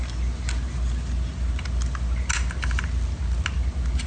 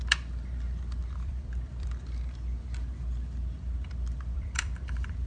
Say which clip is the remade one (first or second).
second